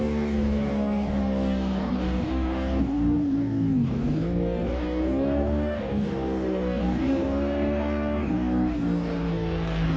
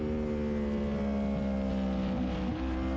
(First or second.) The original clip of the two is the second